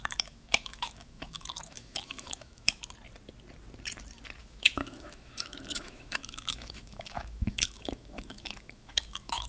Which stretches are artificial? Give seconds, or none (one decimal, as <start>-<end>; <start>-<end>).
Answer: 0.0-2.8; 4.4-9.5